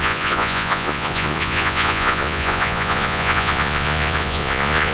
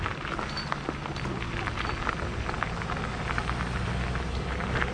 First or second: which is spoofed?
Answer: first